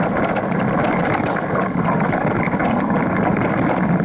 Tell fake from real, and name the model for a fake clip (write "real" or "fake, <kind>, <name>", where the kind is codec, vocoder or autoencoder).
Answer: real